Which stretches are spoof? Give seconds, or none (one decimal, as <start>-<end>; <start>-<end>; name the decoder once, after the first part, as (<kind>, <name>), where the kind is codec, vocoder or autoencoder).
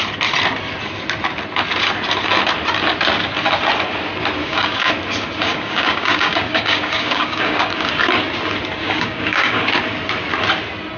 4.4-4.9 (codec, DAC); 5.5-7.9; 8.8-9.7